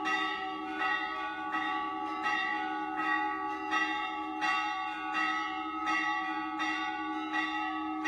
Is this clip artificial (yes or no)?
no